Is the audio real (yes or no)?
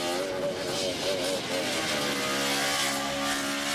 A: yes